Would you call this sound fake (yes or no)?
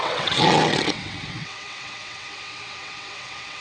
yes